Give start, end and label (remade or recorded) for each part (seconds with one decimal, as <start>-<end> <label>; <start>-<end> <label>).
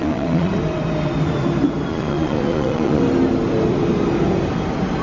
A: 0.0-0.5 remade; 0.5-1.9 recorded; 1.9-3.0 remade; 3.0-5.0 recorded